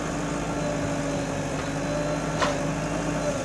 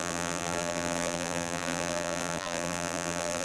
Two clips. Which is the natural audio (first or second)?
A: first